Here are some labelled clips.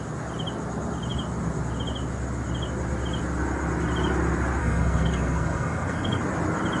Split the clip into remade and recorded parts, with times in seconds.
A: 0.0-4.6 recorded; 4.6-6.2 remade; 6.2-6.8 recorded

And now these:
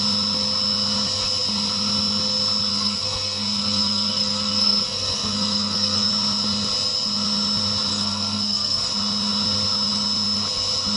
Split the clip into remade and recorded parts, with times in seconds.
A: 0.0-2.7 recorded; 2.7-6.1 remade; 6.1-7.9 recorded; 7.9-8.9 remade; 8.9-11.0 recorded

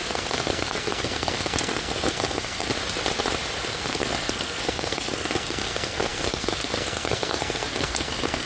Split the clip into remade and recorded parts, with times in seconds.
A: 0.0-2.7 remade; 2.7-3.7 recorded; 3.7-8.5 remade

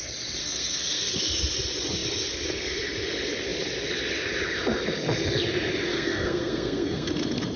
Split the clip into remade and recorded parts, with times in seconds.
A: 0.0-0.4 recorded; 0.4-1.2 remade; 1.2-5.9 recorded; 5.9-7.1 remade; 7.1-7.6 recorded